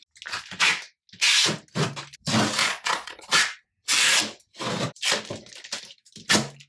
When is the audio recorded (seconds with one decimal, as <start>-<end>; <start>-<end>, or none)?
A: 0.0-2.6; 3.3-6.7